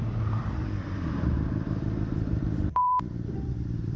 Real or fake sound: fake